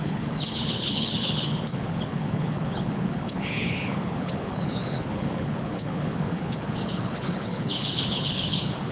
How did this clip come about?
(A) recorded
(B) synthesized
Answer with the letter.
B